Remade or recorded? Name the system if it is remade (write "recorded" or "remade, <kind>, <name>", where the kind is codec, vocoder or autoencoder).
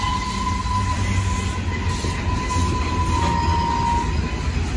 recorded